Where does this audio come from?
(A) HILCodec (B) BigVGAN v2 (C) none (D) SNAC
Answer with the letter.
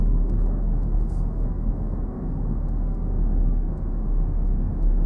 D